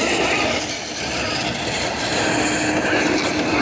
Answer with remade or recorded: recorded